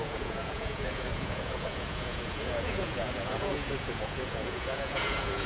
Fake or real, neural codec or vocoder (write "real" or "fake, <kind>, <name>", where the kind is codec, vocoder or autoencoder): fake, vocoder, Vocos